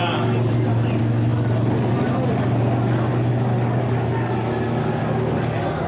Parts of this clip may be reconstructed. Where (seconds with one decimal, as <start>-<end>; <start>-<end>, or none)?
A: none